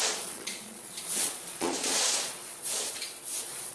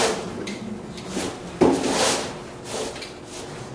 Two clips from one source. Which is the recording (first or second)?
second